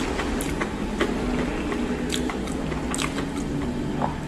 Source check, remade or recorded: recorded